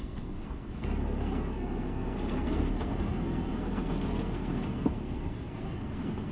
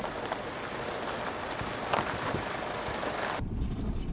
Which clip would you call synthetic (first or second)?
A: first